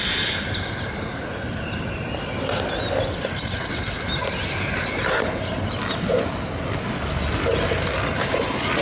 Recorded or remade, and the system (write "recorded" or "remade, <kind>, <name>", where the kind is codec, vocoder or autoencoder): recorded